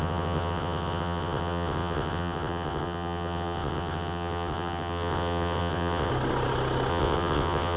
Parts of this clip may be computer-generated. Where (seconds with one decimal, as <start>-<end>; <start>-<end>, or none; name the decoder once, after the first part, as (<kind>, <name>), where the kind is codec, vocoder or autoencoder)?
0.0-6.1 (vocoder, WaveNeXt); 6.9-7.8